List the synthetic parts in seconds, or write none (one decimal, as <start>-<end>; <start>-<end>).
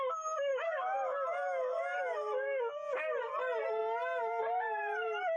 0.5-2.6